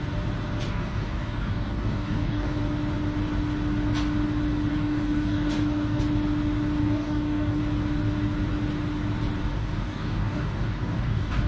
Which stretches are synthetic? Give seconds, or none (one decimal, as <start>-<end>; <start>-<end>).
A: 0.7-2.6; 4.7-6.0; 6.8-7.6; 9.5-11.5